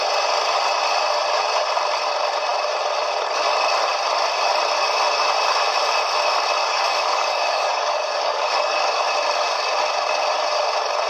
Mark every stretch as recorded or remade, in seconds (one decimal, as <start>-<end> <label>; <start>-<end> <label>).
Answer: 0.0-6.6 recorded; 6.6-9.1 remade; 9.1-11.1 recorded